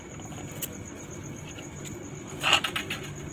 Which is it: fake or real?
real